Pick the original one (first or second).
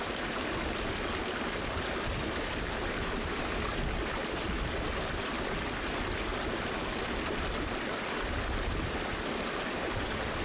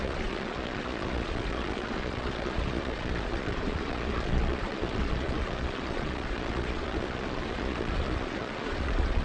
first